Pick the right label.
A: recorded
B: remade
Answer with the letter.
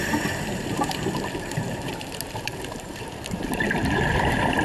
B